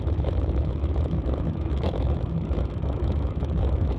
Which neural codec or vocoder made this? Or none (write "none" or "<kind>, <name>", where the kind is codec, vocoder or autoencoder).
autoencoder, DAC-VAE